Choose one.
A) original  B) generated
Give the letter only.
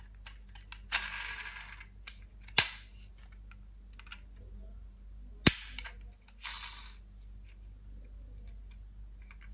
A